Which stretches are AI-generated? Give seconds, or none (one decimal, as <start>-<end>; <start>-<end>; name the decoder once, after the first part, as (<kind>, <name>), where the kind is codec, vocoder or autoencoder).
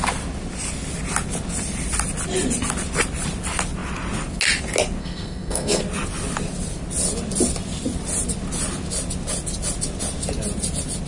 5.0-5.8 (codec, SNAC)